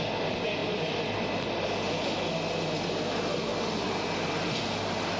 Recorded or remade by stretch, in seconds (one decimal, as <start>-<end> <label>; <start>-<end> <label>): 0.0-5.2 recorded